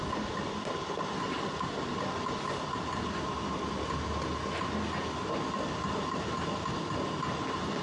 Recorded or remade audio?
recorded